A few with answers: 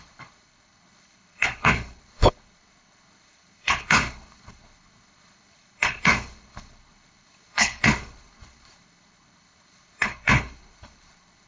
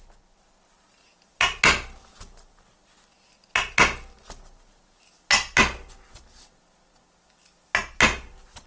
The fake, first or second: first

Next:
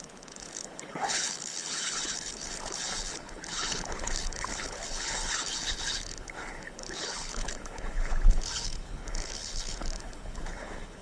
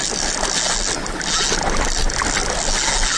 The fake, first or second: first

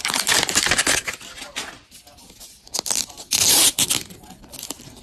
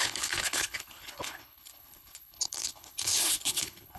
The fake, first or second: second